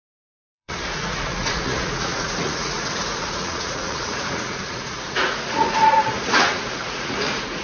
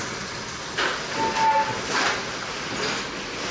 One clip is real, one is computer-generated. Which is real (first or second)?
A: second